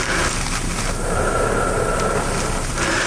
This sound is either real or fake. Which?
real